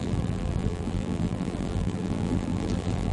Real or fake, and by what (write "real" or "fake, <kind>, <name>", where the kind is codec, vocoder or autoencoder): fake, vocoder, BigVGAN v2